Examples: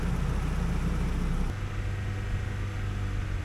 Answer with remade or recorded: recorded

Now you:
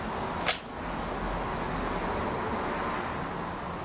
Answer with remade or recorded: recorded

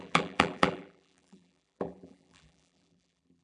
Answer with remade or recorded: remade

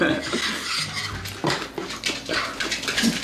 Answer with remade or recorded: recorded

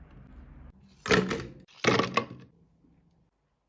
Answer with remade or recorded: recorded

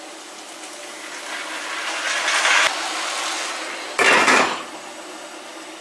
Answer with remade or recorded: recorded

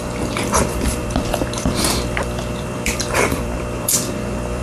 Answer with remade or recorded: remade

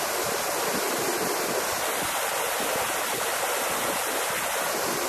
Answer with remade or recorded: recorded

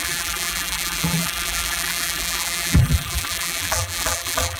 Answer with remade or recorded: remade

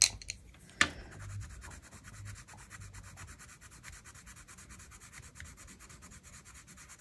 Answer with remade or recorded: recorded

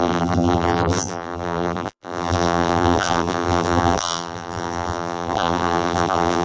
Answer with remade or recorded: remade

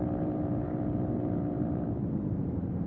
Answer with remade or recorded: remade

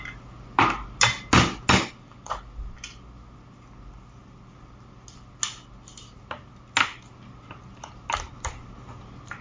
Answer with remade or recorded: recorded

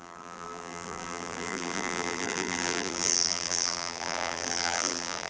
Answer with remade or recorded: remade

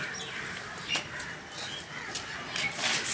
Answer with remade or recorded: recorded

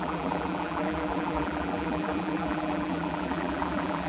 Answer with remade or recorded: remade